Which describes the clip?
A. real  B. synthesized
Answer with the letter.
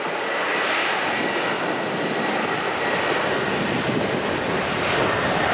A